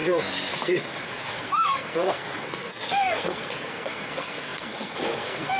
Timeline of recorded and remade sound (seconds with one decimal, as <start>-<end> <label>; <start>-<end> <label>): 0.0-5.6 remade